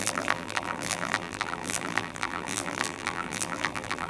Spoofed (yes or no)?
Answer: yes